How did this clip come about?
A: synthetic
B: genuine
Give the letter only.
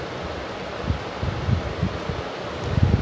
B